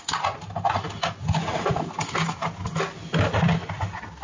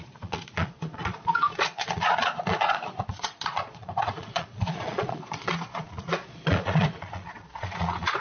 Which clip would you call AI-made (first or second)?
second